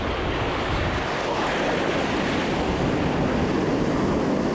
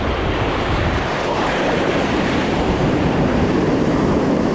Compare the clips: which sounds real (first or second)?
first